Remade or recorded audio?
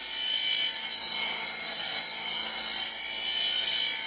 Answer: recorded